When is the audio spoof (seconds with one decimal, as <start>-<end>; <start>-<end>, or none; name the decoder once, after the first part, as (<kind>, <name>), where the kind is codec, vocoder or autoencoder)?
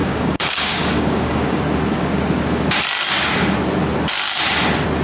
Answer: 0.0-1.6 (codec, DAC)